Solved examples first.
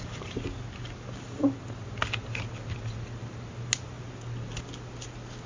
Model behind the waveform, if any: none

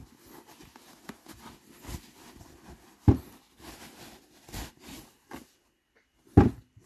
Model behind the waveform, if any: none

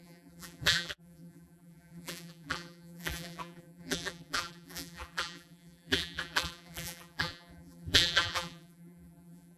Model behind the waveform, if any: vocoder, BigVGAN v2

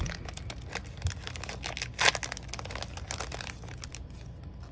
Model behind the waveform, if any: none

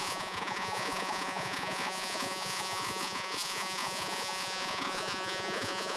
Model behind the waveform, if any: vocoder, Vocos